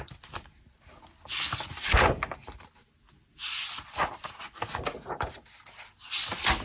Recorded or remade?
recorded